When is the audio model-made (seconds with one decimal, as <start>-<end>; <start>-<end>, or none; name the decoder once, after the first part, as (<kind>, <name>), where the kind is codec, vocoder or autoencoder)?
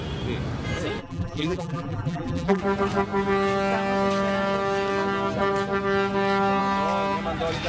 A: 1.0-2.6 (vocoder, BigVGAN v2)